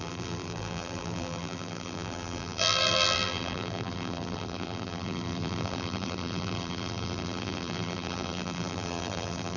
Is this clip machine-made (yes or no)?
yes